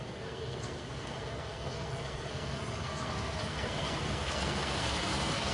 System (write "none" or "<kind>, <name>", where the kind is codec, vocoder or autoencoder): codec, SNAC